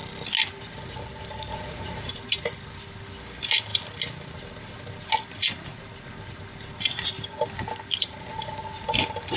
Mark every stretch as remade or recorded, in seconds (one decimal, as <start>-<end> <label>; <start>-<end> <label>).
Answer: 0.0-1.5 recorded; 1.5-2.1 remade; 2.1-9.4 recorded